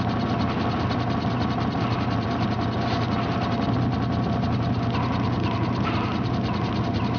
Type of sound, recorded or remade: recorded